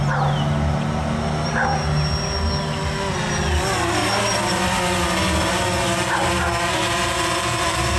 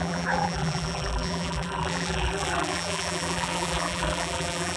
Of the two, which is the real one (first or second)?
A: first